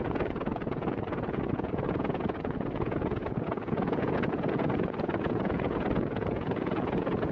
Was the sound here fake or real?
fake